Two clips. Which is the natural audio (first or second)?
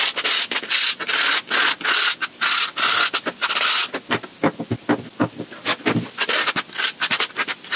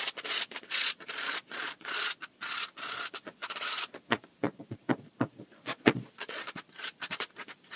first